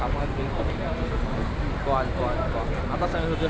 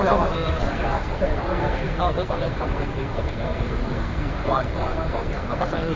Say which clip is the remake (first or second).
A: second